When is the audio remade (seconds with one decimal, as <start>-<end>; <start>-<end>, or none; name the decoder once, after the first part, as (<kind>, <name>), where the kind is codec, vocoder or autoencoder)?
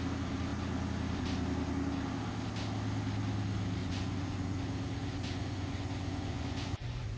3.8-4.6 (vocoder, Vocos); 5.0-7.2